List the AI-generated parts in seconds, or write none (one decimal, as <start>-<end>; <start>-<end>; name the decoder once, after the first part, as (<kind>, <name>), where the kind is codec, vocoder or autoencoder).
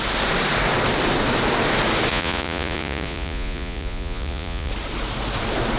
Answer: 2.1-4.7 (vocoder, Vocos)